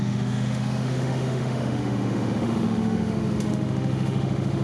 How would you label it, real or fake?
fake